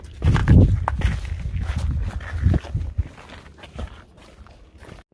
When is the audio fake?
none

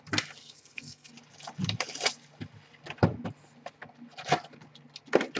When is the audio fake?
0.4-1.1 (codec, SNAC)

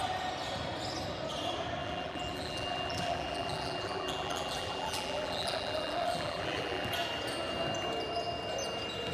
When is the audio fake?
1.8-6.9 (vocoder, BigVGAN v2)

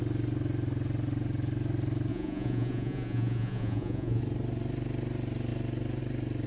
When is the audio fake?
2.1-4.2 (vocoder, Vocos)

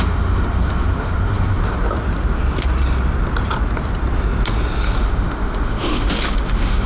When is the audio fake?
0.0-1.6 (autoencoder, DAC-VAE); 5.0-6.9